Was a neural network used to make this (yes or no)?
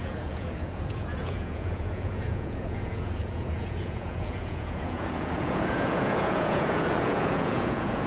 yes